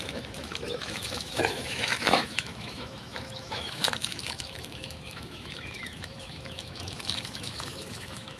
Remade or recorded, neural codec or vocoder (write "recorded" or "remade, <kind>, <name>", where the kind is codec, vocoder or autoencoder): remade, autoencoder, DAC-VAE